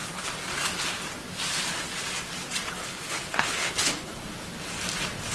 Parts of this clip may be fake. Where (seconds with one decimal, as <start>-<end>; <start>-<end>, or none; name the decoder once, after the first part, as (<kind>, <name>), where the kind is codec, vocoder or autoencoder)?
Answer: 2.8-4.2 (codec, HILCodec)